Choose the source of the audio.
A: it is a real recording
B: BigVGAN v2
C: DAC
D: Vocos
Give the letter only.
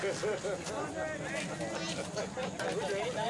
A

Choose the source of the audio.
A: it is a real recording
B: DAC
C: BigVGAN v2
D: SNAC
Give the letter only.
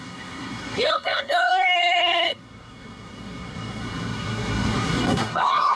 D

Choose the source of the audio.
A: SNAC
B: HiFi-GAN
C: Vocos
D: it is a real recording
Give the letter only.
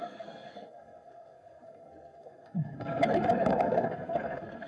A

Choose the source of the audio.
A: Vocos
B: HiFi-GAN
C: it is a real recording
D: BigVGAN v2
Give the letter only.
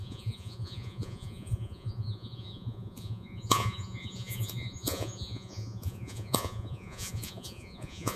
A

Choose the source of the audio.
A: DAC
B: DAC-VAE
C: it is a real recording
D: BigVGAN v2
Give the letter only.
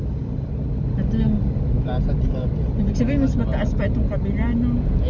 C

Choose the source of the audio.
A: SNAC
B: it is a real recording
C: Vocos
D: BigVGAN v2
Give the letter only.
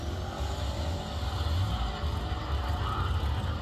B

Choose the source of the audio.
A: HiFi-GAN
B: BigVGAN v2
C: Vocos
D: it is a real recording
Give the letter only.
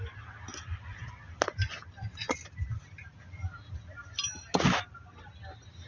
D